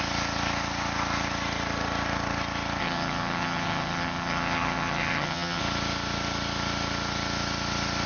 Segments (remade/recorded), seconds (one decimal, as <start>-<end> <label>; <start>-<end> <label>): 0.0-2.8 recorded; 2.8-5.6 remade; 5.6-8.1 recorded